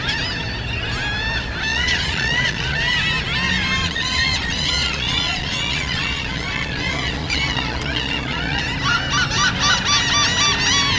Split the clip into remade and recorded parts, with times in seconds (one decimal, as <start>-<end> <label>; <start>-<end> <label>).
0.0-1.7 recorded; 1.7-2.8 remade; 2.8-3.8 recorded; 3.8-8.6 remade; 8.6-11.0 recorded